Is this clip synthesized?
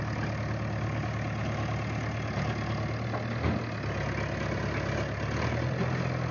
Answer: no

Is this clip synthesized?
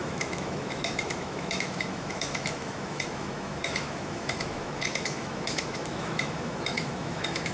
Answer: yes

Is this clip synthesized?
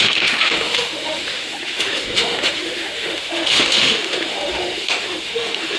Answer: yes